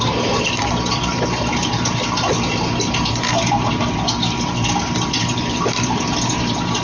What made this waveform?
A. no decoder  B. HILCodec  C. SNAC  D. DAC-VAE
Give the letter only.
A